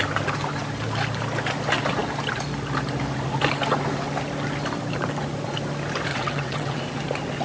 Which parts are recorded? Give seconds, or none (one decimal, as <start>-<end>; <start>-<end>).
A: 0.0-6.1; 6.8-7.4